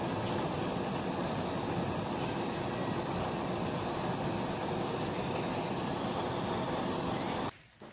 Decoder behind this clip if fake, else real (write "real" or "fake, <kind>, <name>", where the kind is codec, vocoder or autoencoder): real